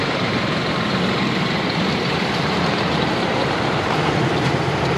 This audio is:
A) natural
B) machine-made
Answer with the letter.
B